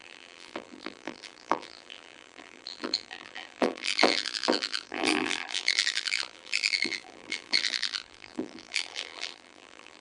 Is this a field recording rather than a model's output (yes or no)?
no